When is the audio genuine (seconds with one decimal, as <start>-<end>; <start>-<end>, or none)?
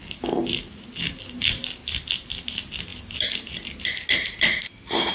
1.6-5.1